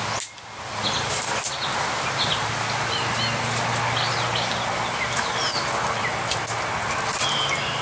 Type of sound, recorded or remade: recorded